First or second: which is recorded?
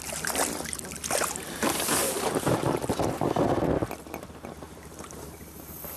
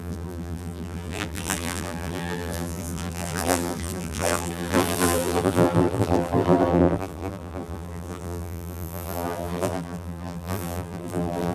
first